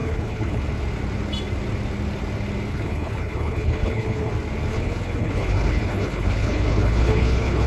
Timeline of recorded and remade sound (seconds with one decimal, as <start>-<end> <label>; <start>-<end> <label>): 0.0-0.6 remade; 0.6-2.7 recorded; 2.7-4.3 remade; 4.3-4.7 recorded; 4.7-7.7 remade